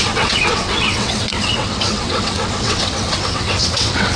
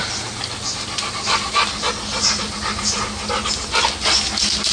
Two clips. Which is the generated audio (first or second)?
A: first